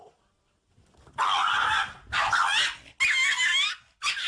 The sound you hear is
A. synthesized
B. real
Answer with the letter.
B